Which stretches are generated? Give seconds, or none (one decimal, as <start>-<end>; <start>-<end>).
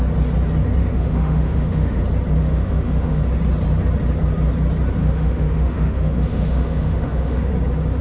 0.8-2.0; 2.4-3.2; 5.0-7.5